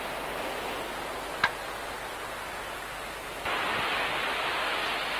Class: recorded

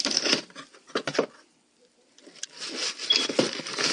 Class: remade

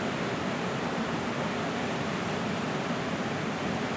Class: remade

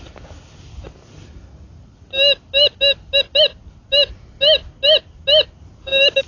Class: recorded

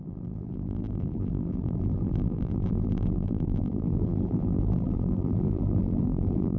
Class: remade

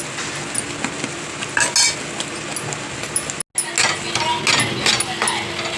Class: recorded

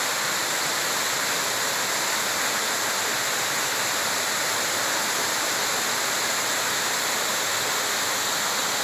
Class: recorded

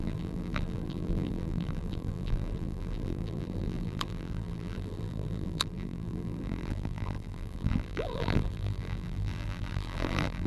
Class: remade